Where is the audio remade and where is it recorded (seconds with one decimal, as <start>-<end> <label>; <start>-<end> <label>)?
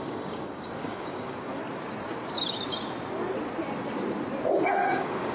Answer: 0.0-1.6 remade; 1.6-4.8 recorded; 4.8-5.3 remade